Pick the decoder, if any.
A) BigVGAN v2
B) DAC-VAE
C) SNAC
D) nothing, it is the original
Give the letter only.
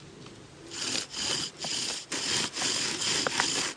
D